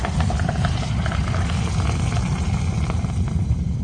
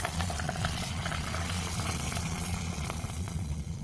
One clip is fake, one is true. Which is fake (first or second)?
second